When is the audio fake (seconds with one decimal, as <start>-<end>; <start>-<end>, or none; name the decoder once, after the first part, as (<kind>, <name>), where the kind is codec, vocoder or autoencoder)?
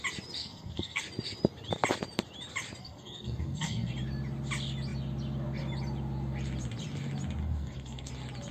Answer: 0.4-1.0 (codec, SNAC); 2.8-3.9; 7.4-8.1